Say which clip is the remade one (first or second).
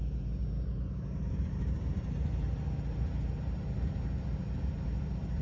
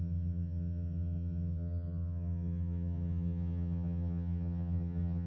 second